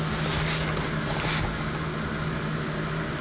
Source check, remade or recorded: recorded